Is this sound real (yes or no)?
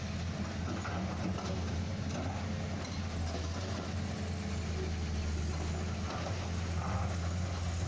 yes